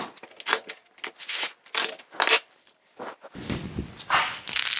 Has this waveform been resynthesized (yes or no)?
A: no